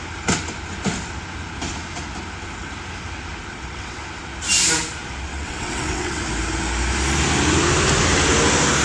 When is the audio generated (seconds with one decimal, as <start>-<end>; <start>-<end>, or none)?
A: 3.5-4.0; 5.3-6.2